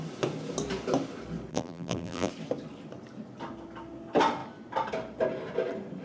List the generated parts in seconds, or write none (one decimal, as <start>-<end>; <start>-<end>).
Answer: 1.5-2.3